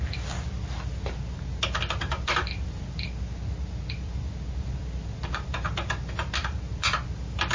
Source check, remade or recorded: recorded